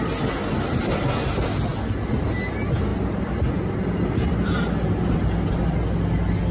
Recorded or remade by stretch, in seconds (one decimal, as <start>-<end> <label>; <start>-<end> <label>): 0.0-6.5 recorded